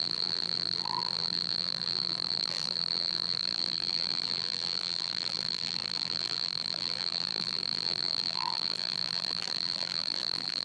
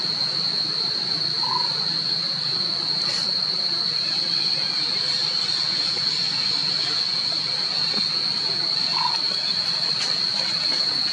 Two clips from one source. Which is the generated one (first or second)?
first